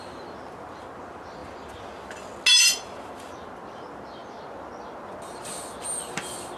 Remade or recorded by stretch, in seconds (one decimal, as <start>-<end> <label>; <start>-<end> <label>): 0.0-6.6 recorded